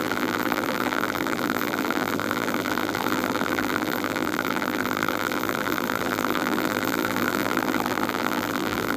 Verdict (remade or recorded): remade